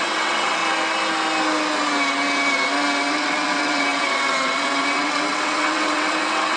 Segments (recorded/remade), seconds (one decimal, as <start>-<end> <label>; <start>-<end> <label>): 0.0-0.6 remade; 0.6-3.1 recorded; 3.1-6.6 remade